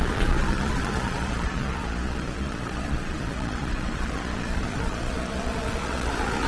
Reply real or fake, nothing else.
fake